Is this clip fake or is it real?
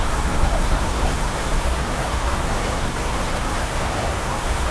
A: fake